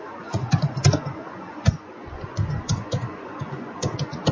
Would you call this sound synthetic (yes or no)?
yes